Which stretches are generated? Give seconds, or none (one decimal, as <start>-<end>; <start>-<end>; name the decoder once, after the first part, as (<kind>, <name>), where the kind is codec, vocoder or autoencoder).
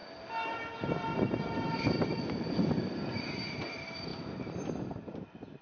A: none